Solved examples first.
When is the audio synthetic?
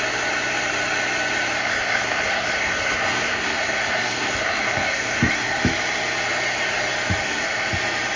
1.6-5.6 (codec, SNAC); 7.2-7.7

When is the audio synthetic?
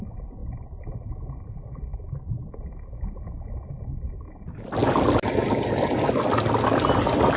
none